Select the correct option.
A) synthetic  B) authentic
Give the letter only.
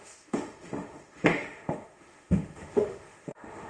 A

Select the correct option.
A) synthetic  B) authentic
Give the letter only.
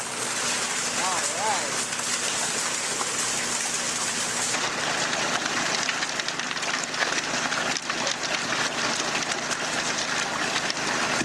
B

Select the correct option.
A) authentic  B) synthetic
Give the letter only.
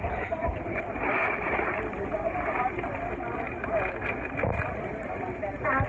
A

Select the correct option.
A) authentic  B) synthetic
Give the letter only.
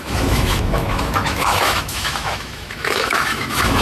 B